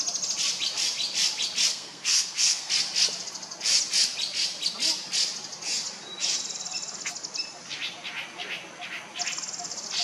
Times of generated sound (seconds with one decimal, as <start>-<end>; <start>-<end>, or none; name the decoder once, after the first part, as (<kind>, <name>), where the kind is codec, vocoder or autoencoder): 1.7-2.7 (codec, SNAC)